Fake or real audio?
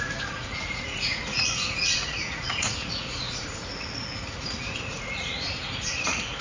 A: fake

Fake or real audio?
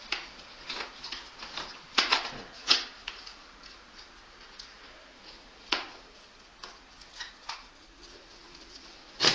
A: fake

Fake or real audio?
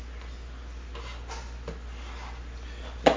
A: real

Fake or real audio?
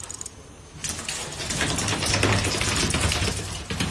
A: real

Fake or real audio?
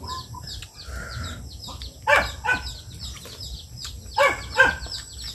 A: real